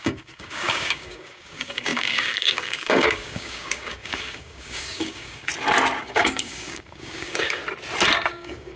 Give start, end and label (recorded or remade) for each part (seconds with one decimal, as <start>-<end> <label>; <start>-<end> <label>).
0.0-5.5 remade; 5.5-6.0 recorded; 6.0-7.6 remade; 7.6-8.3 recorded; 8.3-8.8 remade